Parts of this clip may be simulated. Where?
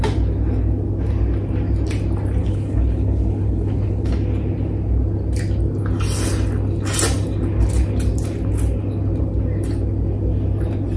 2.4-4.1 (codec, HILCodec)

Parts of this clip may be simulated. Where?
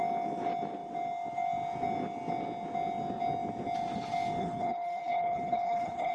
4.4-6.1 (codec, HILCodec)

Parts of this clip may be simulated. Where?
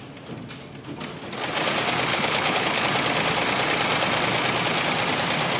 2.1-2.8 (codec, HILCodec)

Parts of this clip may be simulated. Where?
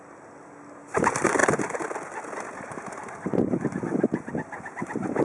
none